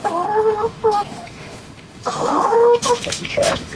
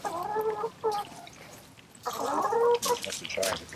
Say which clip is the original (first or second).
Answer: second